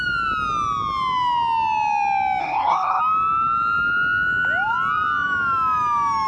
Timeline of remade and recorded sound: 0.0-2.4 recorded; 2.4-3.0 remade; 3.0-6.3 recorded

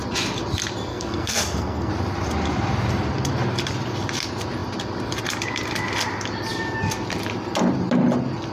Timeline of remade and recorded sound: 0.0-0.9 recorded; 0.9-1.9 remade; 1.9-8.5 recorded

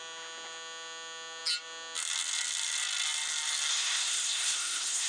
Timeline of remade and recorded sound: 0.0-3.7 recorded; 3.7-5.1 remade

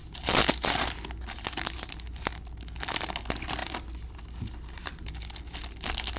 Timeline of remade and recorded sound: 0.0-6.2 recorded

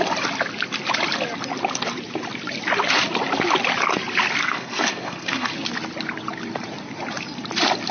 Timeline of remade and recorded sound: 0.0-4.4 recorded; 4.4-5.5 remade; 5.5-7.9 recorded

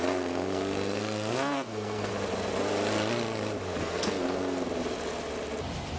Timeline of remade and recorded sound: 0.0-2.1 remade; 2.1-3.8 recorded; 3.8-4.4 remade; 4.4-6.0 recorded

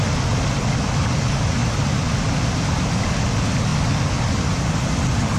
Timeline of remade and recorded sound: 0.0-5.4 recorded

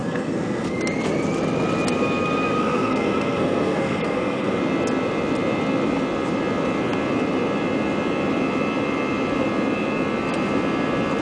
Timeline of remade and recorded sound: 0.0-0.8 remade; 0.8-2.6 recorded; 2.6-4.6 remade; 4.6-11.2 recorded